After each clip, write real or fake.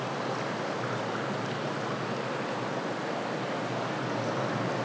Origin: real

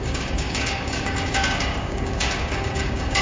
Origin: fake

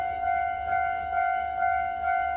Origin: fake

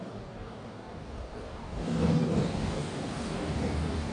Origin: fake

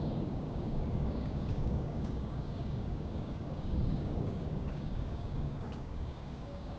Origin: fake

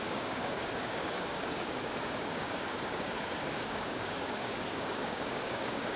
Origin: fake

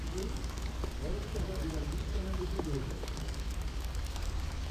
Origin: fake